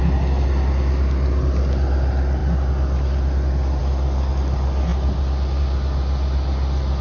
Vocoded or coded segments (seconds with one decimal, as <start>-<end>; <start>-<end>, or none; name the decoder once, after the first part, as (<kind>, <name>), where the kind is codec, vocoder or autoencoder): none